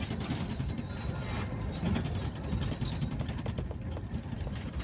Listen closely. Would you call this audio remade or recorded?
remade